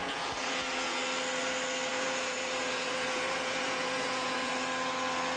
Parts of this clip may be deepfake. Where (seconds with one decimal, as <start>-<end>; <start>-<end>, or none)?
0.0-1.0; 1.9-4.5